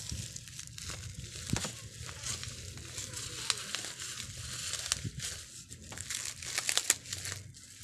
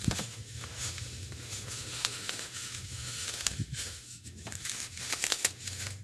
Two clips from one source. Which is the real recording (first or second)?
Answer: first